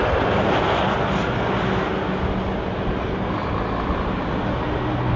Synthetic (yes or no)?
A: no